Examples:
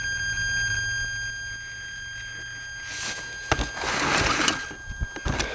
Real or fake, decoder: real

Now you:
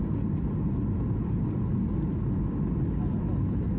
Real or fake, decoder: real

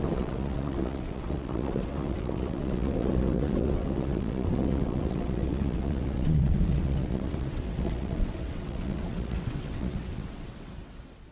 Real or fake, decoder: fake, vocoder, WaveNeXt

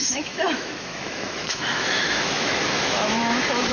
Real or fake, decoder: fake, autoencoder, DAC-VAE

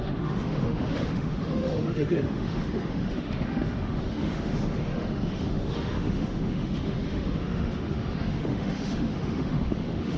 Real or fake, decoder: fake, autoencoder, DAC-VAE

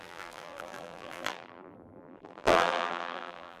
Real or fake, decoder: fake, vocoder, BigVGAN v2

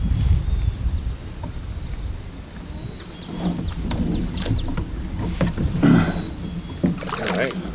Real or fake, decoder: real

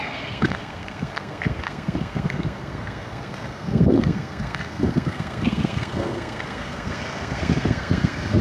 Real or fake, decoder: fake, codec, SNAC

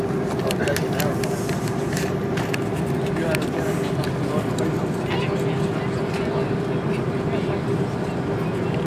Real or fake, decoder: real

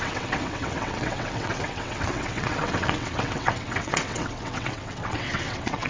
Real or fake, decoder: fake, vocoder, WaveNeXt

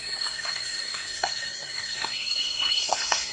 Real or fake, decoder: fake, codec, SNAC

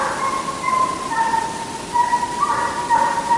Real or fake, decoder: real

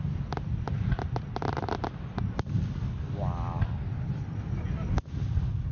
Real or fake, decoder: real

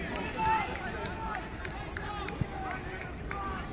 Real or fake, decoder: real